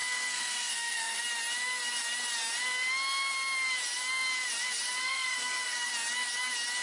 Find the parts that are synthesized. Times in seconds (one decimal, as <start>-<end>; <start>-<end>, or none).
0.0-1.2; 5.0-5.9